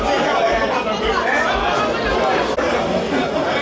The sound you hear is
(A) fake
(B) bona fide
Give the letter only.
B